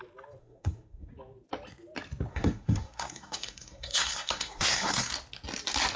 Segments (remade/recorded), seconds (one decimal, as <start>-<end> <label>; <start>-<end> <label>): 0.0-0.4 recorded; 0.4-1.1 remade; 1.1-2.3 recorded; 2.3-5.1 remade; 5.1-6.0 recorded